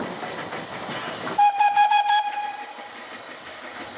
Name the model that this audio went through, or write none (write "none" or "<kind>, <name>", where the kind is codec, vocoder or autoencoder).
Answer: vocoder, BigVGAN v2